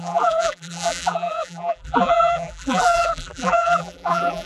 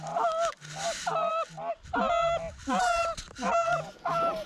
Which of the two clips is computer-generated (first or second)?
first